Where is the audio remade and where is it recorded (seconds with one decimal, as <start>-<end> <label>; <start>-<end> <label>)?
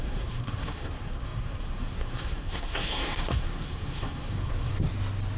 0.0-4.7 remade; 4.7-5.4 recorded